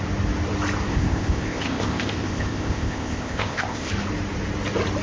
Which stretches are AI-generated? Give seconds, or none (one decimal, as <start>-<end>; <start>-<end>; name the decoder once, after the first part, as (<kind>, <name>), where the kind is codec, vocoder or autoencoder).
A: 0.9-3.9 (codec, ZipCodec)